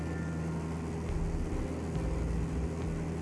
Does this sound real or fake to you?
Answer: real